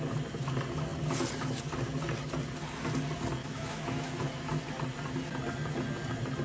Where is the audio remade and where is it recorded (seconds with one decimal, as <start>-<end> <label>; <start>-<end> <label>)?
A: 0.0-3.4 recorded; 3.4-4.2 remade; 4.2-6.4 recorded